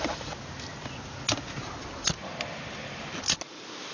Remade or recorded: recorded